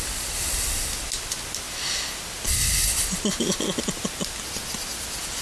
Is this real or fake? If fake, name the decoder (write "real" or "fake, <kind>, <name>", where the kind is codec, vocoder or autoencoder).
real